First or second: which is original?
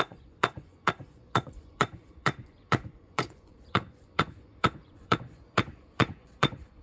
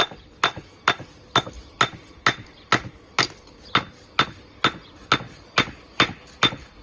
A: second